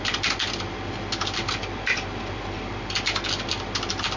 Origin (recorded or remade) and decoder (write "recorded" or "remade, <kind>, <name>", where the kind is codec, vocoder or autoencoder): recorded